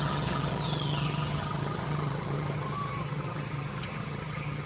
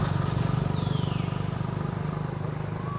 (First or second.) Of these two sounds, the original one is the second